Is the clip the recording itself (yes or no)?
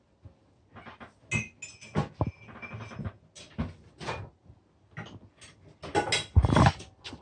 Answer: yes